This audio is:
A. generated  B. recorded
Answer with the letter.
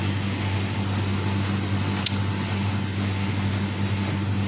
B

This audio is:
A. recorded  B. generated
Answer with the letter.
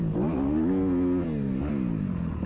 A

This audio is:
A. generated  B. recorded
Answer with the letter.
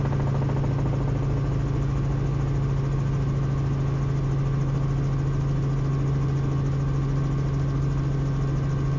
B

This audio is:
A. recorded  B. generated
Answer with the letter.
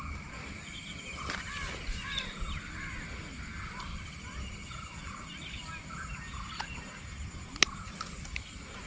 A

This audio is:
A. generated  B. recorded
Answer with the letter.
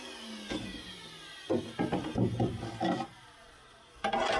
B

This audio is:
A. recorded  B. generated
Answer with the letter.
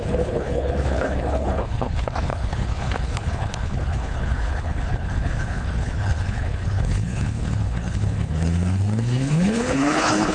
B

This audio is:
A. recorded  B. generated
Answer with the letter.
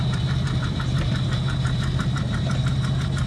B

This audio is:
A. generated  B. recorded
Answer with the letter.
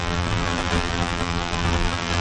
A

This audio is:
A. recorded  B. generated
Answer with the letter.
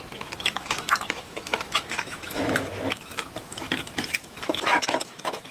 B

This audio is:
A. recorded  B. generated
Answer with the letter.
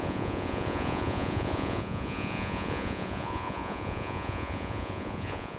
B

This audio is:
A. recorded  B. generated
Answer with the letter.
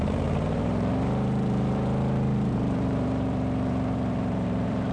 B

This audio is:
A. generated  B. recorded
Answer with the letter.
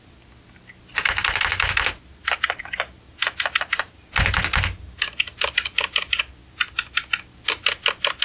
B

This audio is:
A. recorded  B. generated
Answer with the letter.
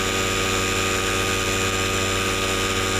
A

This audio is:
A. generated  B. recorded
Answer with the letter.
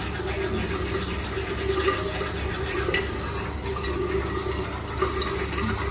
B